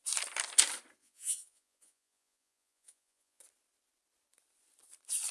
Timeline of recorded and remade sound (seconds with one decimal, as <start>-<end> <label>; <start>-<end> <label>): 0.0-1.0 recorded; 1.0-3.4 remade; 3.4-5.3 recorded